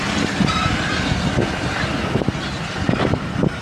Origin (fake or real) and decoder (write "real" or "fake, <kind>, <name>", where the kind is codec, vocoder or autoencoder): real